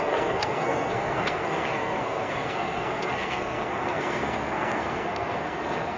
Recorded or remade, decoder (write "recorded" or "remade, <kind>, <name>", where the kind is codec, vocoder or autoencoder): remade, codec, SNAC